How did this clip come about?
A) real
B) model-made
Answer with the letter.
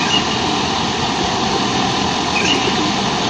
A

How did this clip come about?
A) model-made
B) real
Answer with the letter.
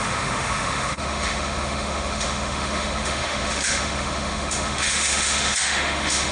A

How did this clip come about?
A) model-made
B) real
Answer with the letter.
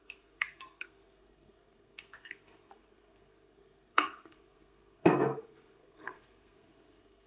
A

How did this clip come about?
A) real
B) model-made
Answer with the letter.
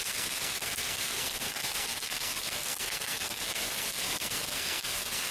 B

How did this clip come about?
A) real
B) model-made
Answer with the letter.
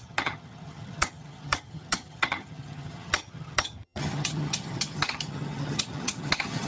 B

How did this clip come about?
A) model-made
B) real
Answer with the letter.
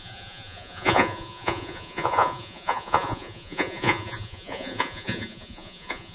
A